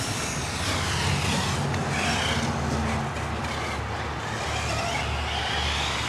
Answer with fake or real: real